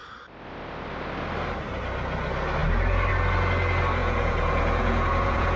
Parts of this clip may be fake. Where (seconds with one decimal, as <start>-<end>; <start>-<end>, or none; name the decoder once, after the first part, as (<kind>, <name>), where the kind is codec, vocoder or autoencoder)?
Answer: 4.0-5.6 (vocoder, Vocos)